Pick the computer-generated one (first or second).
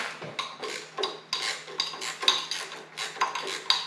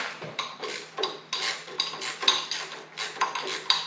second